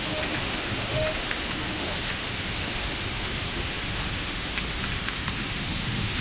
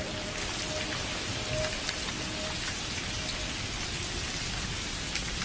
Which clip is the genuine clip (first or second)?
second